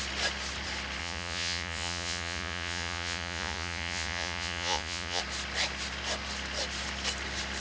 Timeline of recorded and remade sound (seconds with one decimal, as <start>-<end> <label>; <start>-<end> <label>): 0.0-1.0 recorded; 1.0-5.2 remade; 5.2-7.6 recorded